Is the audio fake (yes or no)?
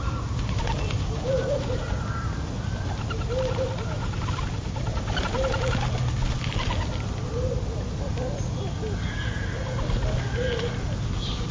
no